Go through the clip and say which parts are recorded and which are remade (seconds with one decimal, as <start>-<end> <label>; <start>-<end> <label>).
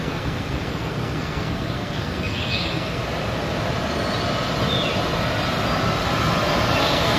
0.0-3.0 remade; 3.0-6.8 recorded; 6.8-7.2 remade